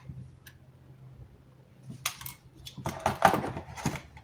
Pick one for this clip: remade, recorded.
recorded